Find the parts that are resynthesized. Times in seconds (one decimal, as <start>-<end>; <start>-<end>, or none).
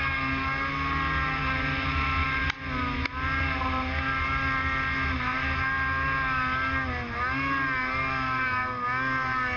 none